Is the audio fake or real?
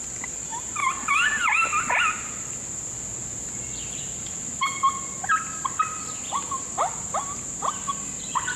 real